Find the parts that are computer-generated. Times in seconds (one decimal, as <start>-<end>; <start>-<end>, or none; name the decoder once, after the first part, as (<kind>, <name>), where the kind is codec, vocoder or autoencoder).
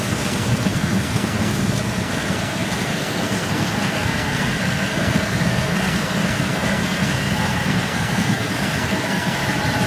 0.0-9.4 (codec, SNAC)